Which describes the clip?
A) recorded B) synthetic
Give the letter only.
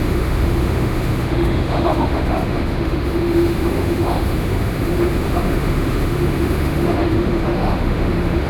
B